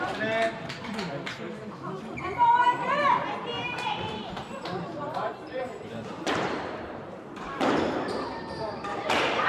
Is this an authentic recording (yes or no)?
no